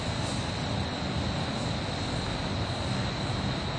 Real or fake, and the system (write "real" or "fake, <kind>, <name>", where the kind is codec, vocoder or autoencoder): real